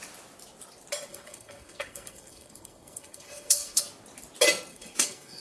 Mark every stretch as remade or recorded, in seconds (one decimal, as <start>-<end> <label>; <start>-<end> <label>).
0.0-1.1 recorded; 1.1-3.8 remade; 3.8-4.7 recorded; 4.7-5.4 remade